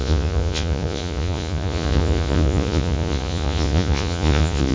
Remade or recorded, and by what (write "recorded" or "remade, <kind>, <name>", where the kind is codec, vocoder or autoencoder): remade, vocoder, Vocos